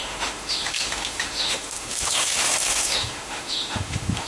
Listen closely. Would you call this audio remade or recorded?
remade